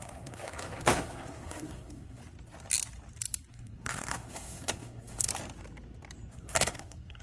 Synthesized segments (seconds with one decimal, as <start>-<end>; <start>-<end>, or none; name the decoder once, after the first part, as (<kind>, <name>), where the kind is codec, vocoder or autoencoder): 0.0-2.2 (codec, SNAC); 3.5-5.3; 6.3-7.2